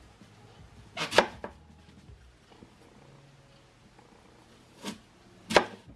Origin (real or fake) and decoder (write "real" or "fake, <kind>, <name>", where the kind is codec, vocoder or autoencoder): real